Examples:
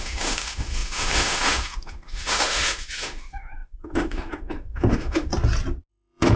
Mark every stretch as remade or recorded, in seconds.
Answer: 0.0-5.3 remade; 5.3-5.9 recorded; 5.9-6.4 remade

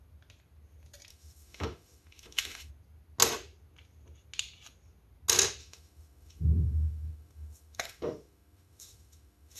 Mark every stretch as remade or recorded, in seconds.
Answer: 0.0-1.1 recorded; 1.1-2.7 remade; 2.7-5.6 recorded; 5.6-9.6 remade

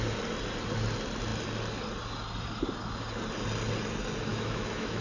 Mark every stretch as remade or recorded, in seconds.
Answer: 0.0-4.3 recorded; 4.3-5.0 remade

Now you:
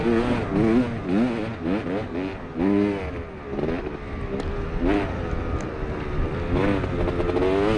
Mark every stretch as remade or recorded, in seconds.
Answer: 0.0-7.8 recorded

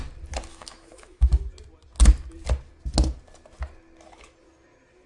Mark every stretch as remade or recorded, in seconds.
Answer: 0.0-0.5 recorded; 0.5-1.3 remade; 1.3-5.1 recorded

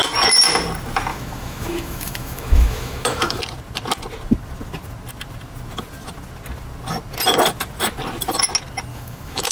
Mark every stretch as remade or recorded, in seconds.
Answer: 0.0-1.1 recorded; 1.1-3.4 remade; 3.4-8.9 recorded; 8.9-9.5 remade

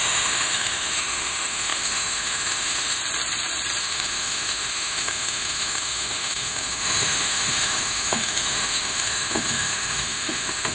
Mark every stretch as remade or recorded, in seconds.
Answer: 0.0-3.0 remade; 3.0-3.8 recorded; 3.8-10.7 remade

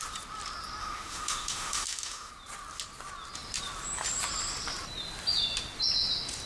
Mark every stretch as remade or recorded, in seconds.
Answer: 0.0-0.8 recorded; 0.8-2.3 remade; 2.3-6.5 recorded